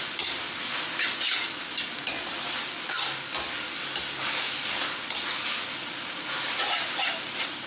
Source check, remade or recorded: recorded